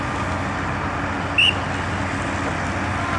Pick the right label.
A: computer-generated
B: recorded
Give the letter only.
B